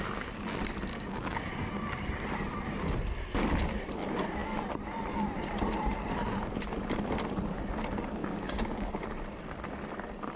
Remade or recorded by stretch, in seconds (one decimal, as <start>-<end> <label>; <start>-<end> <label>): 0.0-0.9 recorded; 0.9-1.7 remade; 1.7-8.2 recorded; 8.2-8.9 remade; 8.9-10.4 recorded